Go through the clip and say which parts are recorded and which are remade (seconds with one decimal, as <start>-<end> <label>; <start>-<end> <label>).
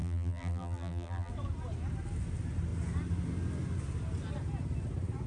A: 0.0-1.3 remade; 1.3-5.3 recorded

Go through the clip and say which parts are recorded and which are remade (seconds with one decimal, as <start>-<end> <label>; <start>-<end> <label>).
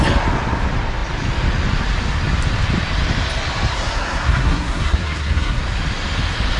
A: 0.0-3.7 recorded; 3.7-5.6 remade; 5.6-6.6 recorded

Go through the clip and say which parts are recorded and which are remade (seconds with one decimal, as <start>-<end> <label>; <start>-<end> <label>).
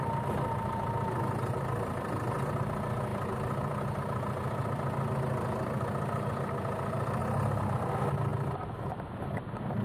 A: 0.0-9.8 recorded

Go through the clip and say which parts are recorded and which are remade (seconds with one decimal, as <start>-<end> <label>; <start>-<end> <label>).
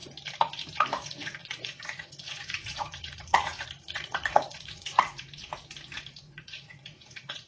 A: 0.0-0.7 recorded; 0.7-5.3 remade; 5.3-6.2 recorded; 6.2-7.5 remade